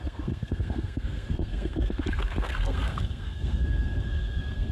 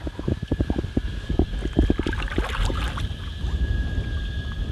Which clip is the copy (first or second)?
first